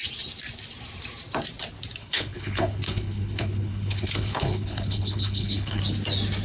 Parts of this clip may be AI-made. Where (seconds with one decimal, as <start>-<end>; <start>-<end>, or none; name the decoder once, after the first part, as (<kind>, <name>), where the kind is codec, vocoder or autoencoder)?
2.0-5.8 (codec, HILCodec)